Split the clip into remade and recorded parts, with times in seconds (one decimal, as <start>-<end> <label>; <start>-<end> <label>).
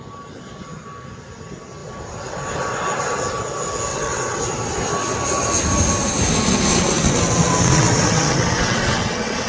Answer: 0.0-3.9 recorded; 3.9-4.4 remade; 4.4-6.7 recorded; 6.7-9.5 remade